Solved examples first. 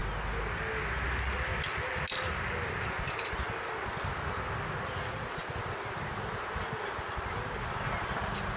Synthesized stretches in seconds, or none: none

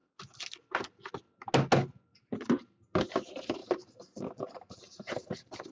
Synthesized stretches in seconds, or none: 2.1-2.6; 3.6-5.7

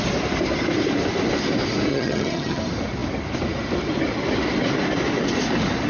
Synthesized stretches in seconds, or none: 1.9-2.6